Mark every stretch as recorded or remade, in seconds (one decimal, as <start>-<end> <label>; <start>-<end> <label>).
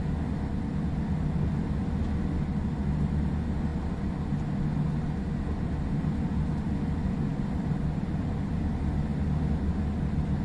0.0-7.3 recorded; 7.3-8.5 remade; 8.5-10.4 recorded